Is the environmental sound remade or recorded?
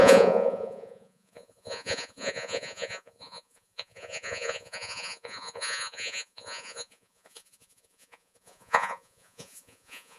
remade